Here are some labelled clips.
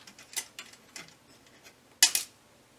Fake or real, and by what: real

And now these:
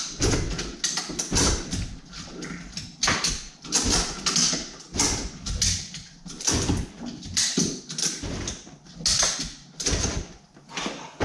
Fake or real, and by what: real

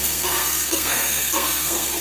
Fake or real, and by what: fake, codec, SNAC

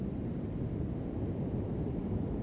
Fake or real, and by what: real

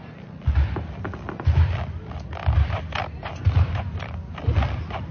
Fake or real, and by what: real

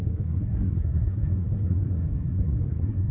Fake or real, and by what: fake, codec, SNAC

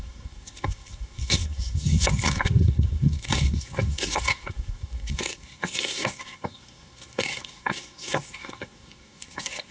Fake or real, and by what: fake, codec, SNAC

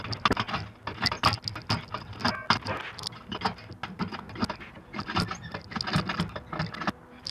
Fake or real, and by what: real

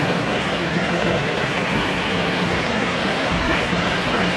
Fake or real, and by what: fake, codec, SNAC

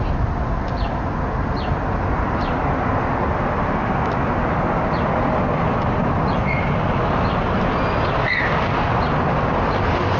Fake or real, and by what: real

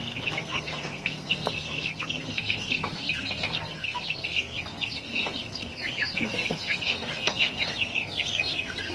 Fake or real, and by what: fake, codec, SNAC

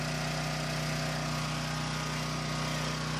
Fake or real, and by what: real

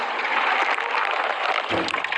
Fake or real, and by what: real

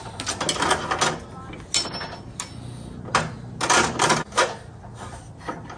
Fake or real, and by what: real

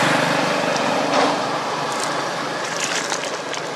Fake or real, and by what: real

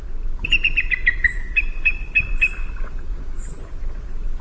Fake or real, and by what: real